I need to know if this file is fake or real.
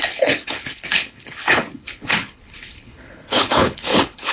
fake